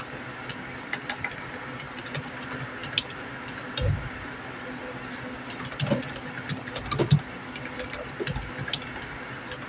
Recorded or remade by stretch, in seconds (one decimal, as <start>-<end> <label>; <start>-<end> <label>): 0.0-9.7 recorded